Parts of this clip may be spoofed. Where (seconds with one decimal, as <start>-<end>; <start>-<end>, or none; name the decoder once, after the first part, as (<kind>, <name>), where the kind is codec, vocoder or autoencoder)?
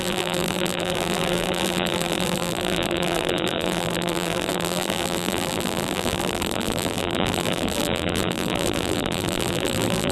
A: 0.0-10.1 (vocoder, BigVGAN v2)